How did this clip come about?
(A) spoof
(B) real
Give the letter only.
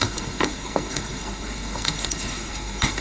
A